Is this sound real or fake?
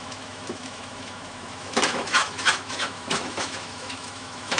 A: fake